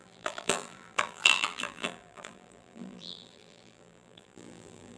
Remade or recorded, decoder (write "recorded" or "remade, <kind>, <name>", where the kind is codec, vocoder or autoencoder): remade, vocoder, BigVGAN v2